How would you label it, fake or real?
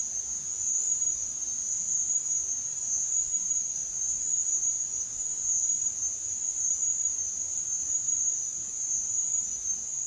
real